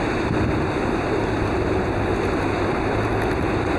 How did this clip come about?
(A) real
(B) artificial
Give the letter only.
A